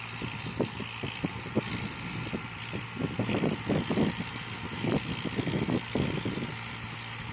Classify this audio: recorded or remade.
recorded